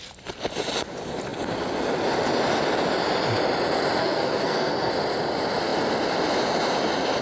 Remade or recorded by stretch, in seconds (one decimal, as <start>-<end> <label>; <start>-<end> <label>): 0.0-4.0 recorded; 4.0-4.9 remade; 4.9-7.2 recorded